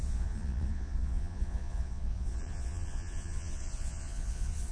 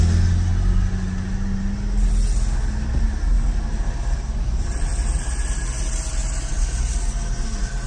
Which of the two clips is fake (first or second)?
first